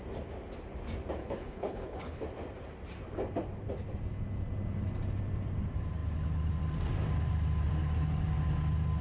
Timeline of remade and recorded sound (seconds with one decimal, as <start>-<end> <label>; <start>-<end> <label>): 0.0-1.2 recorded; 1.2-2.2 remade; 2.2-9.0 recorded

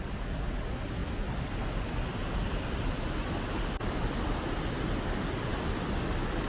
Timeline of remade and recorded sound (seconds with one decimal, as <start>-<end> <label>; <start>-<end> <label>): 0.0-6.5 recorded

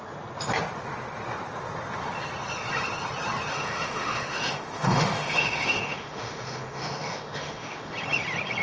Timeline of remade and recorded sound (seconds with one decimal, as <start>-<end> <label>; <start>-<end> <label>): 0.0-3.5 recorded; 3.5-7.9 remade; 7.9-8.6 recorded

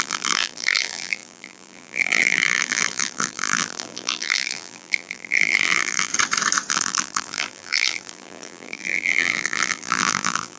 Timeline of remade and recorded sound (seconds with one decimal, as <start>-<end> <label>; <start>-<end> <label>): 0.0-6.1 remade; 6.1-6.7 recorded; 6.7-10.6 remade